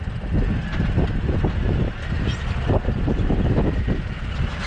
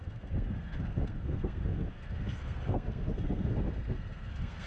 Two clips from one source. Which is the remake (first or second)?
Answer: second